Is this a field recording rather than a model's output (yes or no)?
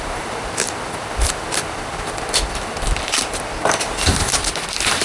no